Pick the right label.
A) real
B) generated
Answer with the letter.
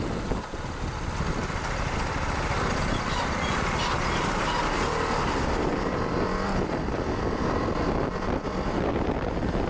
A